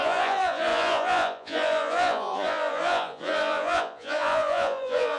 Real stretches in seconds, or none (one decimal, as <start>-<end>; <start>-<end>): none